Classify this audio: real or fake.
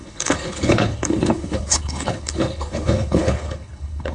fake